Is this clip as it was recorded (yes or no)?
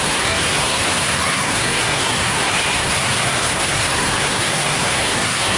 no